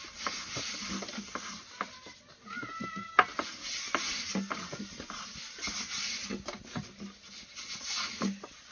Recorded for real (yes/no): yes